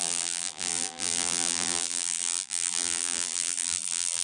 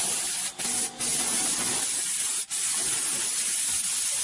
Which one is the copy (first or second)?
first